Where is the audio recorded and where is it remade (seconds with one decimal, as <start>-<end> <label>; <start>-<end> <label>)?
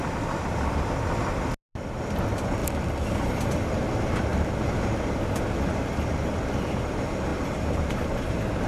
0.0-7.3 recorded; 7.3-7.9 remade; 7.9-8.7 recorded